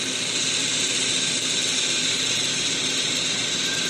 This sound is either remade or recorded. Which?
remade